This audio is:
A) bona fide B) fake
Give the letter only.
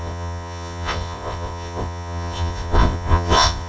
B